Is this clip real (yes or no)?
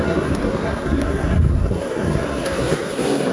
no